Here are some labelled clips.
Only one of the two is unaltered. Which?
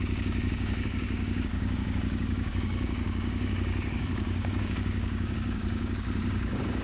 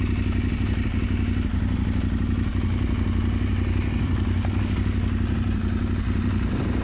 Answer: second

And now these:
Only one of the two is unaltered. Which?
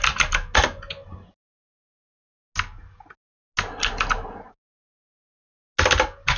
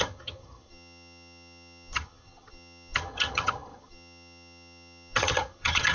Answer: first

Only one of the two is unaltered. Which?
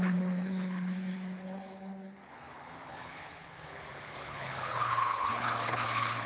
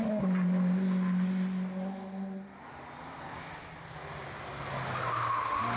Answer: second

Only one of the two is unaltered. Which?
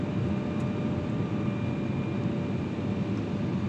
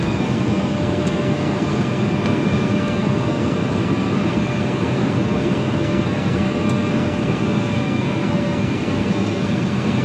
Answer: first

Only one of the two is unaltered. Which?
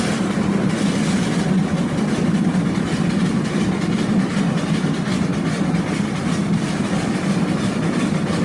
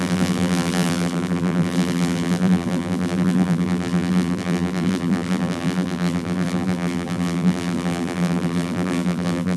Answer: first